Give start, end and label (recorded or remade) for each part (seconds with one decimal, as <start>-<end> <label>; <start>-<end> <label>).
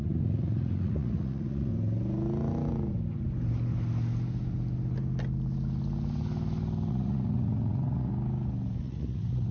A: 0.0-1.7 remade; 1.7-6.9 recorded; 6.9-8.1 remade; 8.1-8.8 recorded; 8.8-9.5 remade